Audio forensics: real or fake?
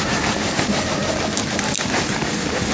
real